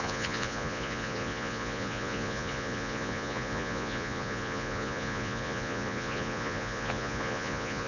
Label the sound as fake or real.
fake